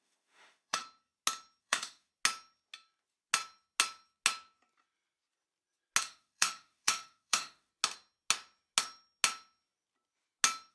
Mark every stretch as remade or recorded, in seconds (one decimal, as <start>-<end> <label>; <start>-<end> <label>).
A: 0.0-0.8 remade; 0.8-1.6 recorded; 1.6-2.1 remade; 2.1-6.0 recorded; 6.0-7.7 remade; 7.7-10.7 recorded